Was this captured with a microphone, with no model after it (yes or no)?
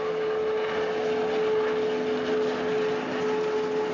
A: yes